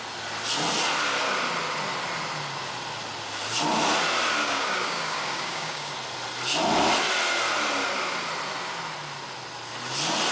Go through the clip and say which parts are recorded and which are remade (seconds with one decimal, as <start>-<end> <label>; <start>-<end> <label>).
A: 0.0-4.4 recorded; 4.4-5.9 remade; 5.9-10.3 recorded